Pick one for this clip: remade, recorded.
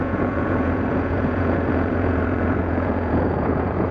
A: remade